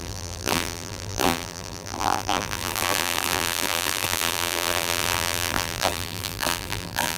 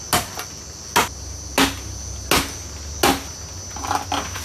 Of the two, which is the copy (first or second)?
first